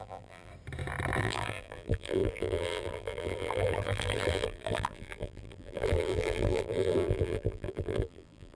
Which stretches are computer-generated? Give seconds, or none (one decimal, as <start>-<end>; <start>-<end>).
0.0-0.5; 1.2-8.6